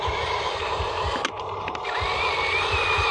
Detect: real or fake fake